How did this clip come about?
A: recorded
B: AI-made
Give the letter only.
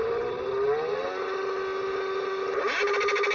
A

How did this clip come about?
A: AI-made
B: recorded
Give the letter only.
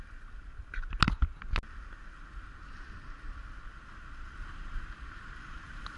B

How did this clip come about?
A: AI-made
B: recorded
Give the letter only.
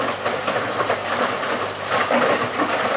B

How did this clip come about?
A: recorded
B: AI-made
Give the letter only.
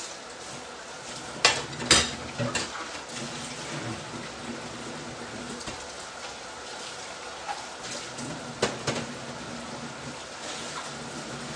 A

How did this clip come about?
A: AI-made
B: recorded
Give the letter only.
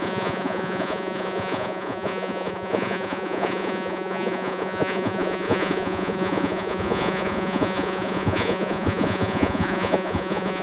A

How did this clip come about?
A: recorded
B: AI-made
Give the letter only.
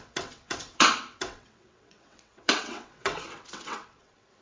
B